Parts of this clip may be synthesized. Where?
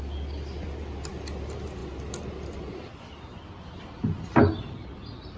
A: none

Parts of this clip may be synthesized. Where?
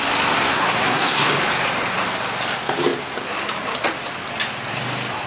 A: 0.5-1.3 (codec, SNAC)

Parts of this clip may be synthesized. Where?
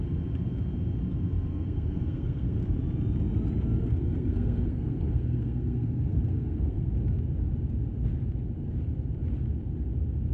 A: 1.5-2.6 (codec, SNAC); 3.8-6.9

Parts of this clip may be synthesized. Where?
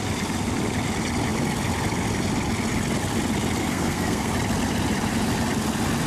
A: 3.6-4.3 (codec, SNAC)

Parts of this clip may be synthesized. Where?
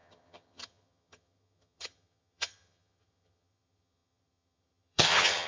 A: 0.0-5.5 (vocoder, HiFi-GAN)